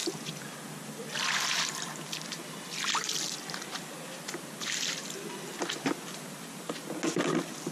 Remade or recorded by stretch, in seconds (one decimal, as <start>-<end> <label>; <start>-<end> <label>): 0.0-7.7 recorded